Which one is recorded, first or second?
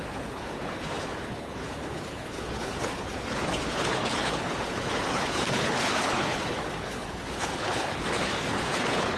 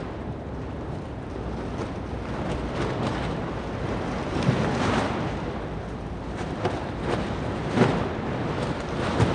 second